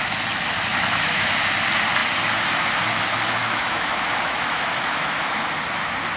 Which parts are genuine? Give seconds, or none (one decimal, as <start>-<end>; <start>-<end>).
0.0-0.7; 1.3-3.4; 5.4-6.2